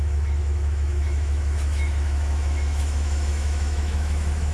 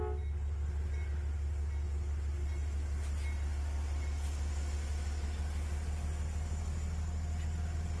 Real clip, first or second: second